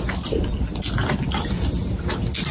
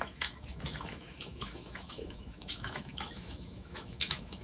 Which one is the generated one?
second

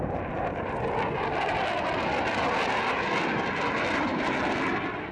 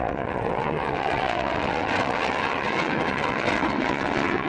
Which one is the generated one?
second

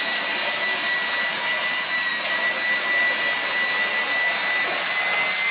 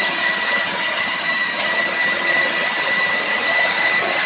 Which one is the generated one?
second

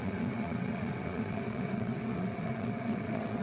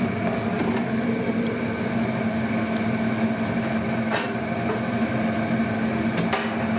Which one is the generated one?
first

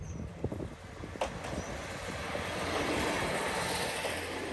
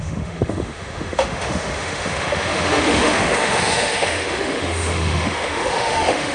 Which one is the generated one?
second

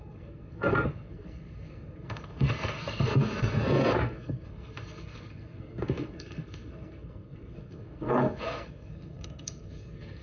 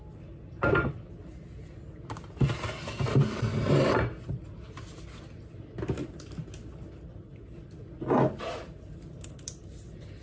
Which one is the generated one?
first